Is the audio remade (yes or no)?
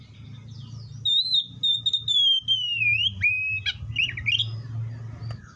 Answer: no